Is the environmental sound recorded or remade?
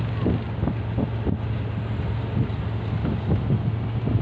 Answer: recorded